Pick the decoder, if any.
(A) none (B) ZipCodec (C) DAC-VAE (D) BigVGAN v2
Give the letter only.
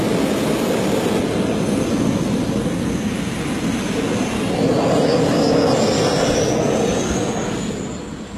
A